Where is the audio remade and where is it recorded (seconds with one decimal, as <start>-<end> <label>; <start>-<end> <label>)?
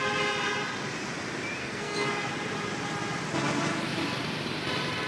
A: 0.0-1.6 recorded; 1.6-2.3 remade; 2.3-5.1 recorded